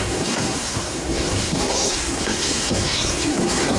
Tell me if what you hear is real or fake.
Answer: fake